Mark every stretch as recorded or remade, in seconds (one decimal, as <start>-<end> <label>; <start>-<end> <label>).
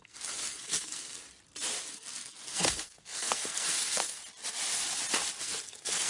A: 0.0-1.2 remade; 1.2-1.9 recorded; 1.9-4.2 remade; 4.2-5.4 recorded; 5.4-6.1 remade